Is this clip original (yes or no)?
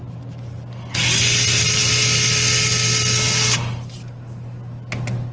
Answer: yes